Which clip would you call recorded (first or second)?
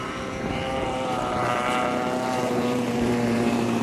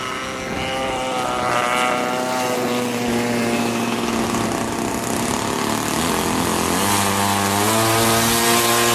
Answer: second